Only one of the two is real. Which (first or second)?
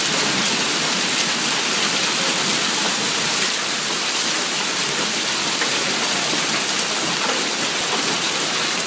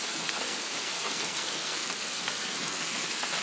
first